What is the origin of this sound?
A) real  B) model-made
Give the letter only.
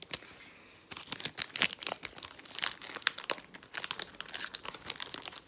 A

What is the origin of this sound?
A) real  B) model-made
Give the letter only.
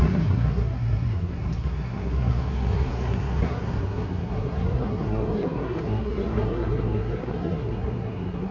B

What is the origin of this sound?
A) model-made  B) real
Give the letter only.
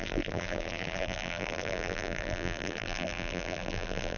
A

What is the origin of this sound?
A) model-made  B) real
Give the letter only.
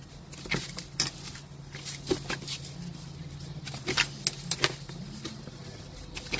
B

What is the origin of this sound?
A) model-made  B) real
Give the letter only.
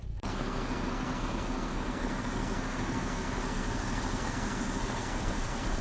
A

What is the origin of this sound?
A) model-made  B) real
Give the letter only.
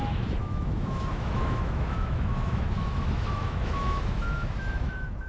A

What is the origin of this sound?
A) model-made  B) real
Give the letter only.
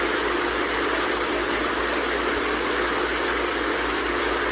B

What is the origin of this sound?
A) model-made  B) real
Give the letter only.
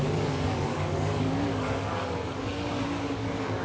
A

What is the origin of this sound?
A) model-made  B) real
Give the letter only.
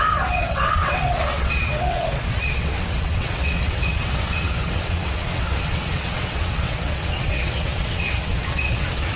A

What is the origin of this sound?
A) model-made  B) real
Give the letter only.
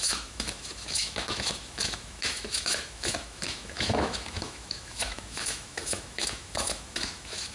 A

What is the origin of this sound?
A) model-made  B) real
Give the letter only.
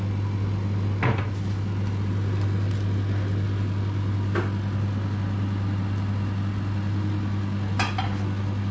B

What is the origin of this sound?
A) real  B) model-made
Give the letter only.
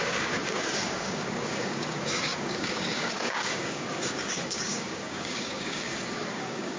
B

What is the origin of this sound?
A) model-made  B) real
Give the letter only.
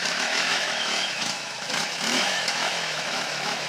A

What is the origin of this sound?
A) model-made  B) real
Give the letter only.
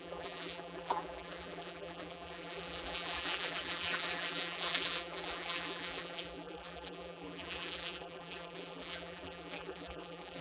A